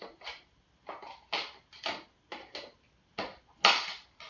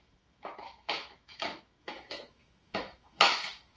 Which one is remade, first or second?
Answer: second